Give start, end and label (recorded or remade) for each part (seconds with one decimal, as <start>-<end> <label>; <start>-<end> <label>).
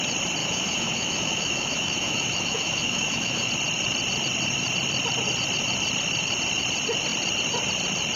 0.0-0.4 recorded; 0.4-3.5 remade; 3.5-8.2 recorded